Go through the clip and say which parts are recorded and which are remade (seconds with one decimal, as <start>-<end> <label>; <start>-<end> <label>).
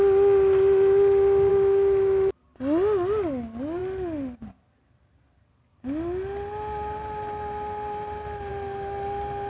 0.0-1.5 recorded; 1.5-2.3 remade; 2.3-9.5 recorded